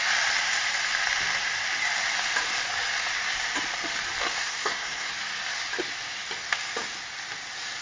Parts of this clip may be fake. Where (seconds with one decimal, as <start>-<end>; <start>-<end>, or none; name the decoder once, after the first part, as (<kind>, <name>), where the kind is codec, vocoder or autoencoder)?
4.4-5.1 (codec, SNAC)